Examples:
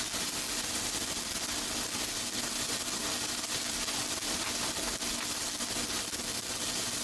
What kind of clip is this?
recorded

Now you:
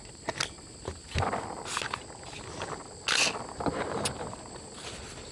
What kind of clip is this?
recorded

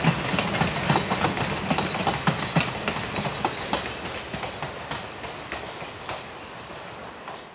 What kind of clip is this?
recorded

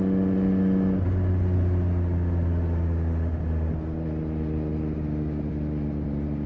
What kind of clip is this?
recorded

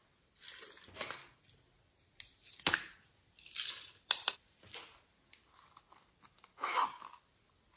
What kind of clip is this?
recorded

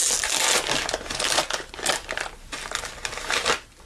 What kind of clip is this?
recorded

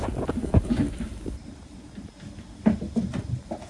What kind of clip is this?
recorded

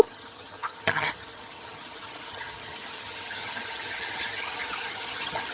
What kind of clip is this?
remade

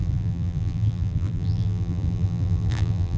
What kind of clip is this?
remade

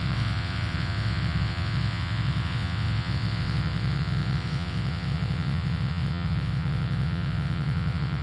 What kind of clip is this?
remade